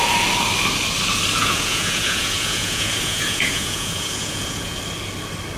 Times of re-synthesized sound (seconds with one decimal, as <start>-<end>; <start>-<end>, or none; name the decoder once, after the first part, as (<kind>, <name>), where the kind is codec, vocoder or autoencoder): 1.4-4.8 (vocoder, Vocos)